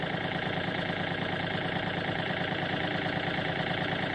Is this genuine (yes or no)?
no